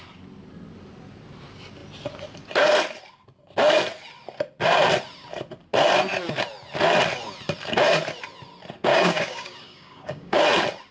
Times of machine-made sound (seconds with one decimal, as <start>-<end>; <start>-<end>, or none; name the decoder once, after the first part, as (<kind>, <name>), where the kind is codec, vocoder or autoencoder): 8.9-10.4 (codec, DAC)